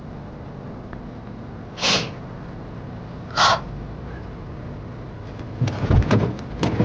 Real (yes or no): yes